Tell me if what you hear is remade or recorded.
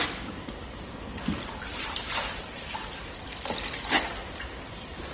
recorded